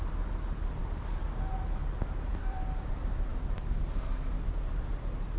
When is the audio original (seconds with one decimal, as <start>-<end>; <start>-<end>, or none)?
0.0-2.3; 2.9-5.4